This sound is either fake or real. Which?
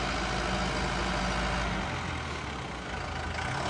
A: real